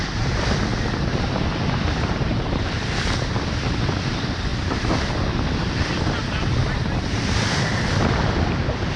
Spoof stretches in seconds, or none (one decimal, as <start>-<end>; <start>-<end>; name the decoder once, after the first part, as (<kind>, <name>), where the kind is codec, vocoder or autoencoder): 0.7-2.4 (vocoder, BigVGAN v2)